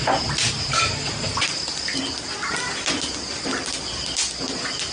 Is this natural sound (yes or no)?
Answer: yes